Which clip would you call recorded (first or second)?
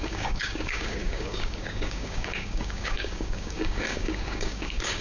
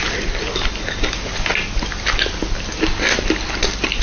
second